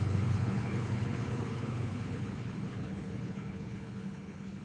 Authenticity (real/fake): fake